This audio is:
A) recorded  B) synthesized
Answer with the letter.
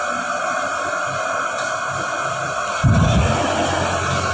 A